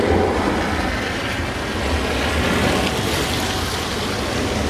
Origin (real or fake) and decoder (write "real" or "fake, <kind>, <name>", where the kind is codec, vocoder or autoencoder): real